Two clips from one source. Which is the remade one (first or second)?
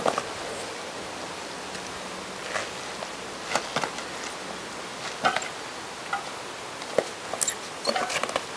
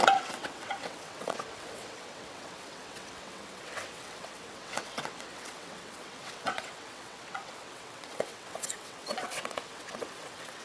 second